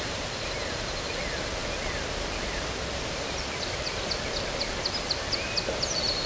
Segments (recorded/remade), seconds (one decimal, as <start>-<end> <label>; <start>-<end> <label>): 0.0-6.3 recorded